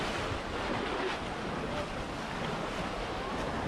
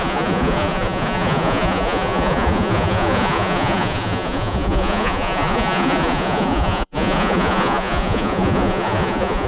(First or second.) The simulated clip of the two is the second